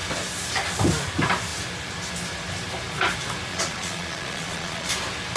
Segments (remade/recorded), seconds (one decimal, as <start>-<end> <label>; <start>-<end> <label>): 0.0-3.5 recorded; 3.5-4.9 remade; 4.9-5.4 recorded